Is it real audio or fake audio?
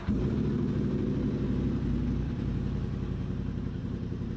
fake